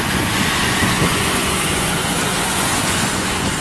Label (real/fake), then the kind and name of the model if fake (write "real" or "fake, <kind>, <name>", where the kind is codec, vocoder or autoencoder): fake, vocoder, Vocos